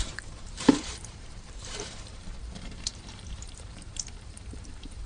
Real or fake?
fake